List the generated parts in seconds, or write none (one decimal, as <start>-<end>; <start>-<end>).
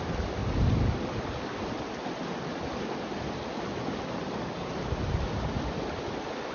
none